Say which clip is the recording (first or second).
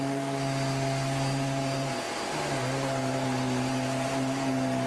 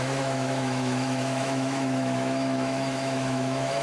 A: first